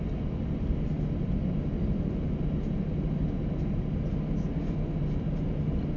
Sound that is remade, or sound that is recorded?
recorded